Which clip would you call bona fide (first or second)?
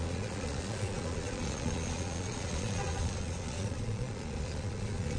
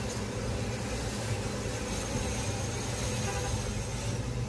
second